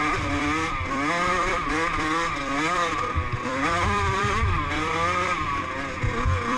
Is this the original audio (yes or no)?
no